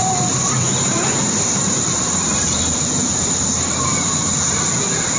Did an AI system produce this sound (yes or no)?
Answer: yes